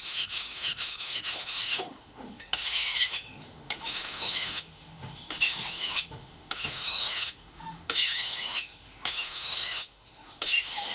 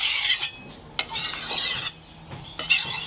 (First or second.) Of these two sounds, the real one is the second